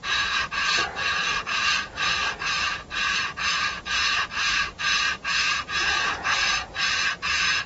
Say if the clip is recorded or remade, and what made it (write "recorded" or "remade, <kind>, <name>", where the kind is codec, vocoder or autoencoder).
remade, vocoder, Vocos